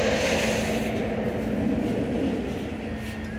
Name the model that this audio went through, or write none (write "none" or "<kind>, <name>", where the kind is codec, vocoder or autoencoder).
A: none